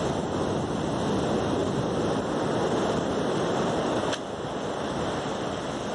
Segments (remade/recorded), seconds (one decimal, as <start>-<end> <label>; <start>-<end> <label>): 0.0-5.9 recorded